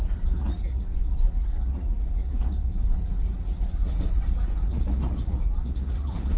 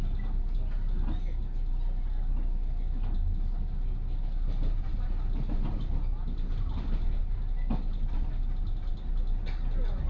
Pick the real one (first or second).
second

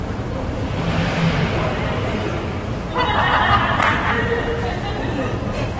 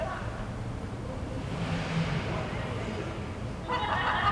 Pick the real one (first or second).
second